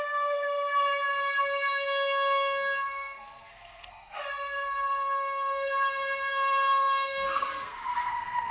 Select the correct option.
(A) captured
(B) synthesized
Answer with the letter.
B